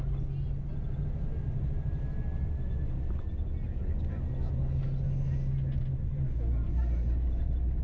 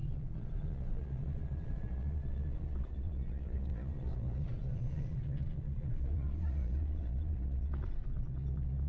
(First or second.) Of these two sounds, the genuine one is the first